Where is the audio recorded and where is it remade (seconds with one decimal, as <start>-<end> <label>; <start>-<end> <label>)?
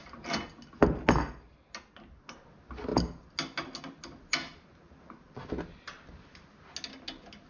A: 0.0-7.5 recorded